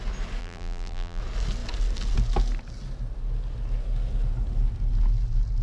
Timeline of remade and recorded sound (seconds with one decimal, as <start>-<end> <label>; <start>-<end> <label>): 0.0-0.4 recorded; 0.4-1.2 remade; 1.2-5.6 recorded